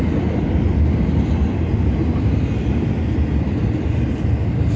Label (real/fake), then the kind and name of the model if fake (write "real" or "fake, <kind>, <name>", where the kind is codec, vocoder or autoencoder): real